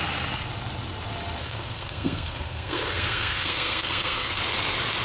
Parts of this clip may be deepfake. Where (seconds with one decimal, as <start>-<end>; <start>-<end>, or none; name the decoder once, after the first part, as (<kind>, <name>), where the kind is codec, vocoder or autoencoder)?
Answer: 1.4-4.4 (codec, SNAC)